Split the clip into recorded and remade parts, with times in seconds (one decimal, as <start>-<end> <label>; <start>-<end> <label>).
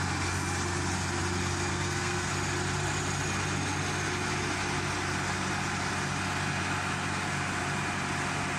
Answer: 0.0-1.7 recorded; 1.7-2.3 remade; 2.3-8.6 recorded